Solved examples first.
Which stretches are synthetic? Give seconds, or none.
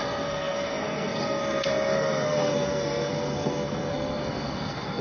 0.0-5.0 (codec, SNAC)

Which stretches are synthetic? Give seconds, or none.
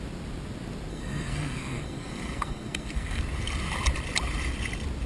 0.9-3.2 (codec, SNAC)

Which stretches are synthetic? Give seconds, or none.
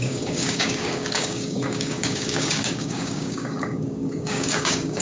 0.0-5.0 (codec, DAC)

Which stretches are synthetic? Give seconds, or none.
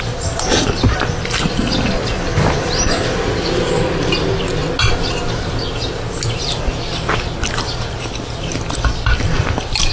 none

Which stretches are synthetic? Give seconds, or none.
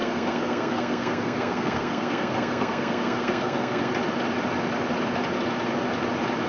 0.0-3.9 (codec, SNAC)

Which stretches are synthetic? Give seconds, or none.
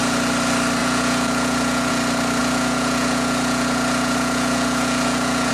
0.8-1.9 (vocoder, Vocos); 2.4-5.5